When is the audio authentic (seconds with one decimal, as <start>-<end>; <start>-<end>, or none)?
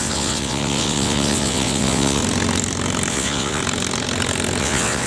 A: 2.2-3.1; 3.6-4.6